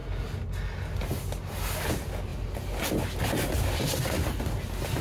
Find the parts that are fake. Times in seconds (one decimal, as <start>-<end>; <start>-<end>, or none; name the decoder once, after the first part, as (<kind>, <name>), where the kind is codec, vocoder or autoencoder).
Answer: none